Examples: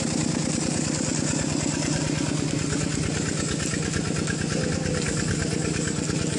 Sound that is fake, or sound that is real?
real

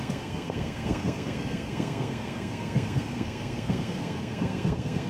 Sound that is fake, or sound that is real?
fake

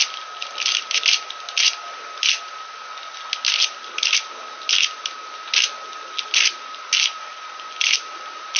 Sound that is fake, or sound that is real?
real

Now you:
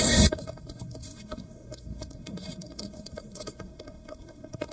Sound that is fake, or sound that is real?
fake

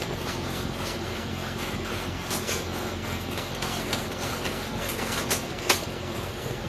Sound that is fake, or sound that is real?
fake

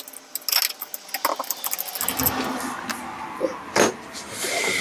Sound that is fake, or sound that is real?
real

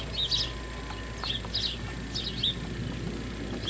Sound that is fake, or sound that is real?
real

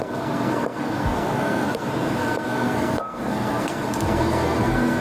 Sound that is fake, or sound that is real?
fake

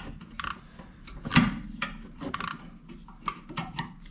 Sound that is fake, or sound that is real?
real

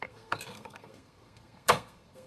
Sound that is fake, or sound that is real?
fake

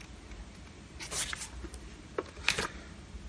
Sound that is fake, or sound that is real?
real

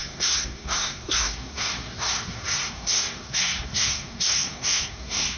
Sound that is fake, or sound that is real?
fake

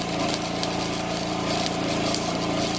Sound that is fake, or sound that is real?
real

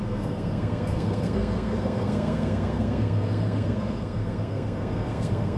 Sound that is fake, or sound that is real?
fake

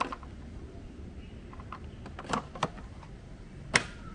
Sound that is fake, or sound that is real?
real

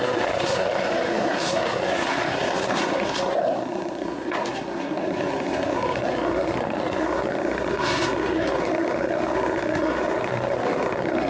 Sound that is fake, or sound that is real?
fake